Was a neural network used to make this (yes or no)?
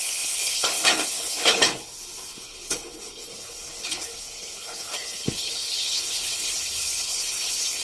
yes